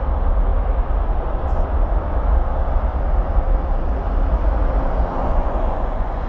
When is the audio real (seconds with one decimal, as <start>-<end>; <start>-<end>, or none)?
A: 0.0-5.2